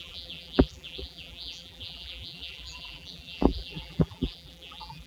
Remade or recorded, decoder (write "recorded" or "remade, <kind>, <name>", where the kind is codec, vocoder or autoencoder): remade, vocoder, BigVGAN v2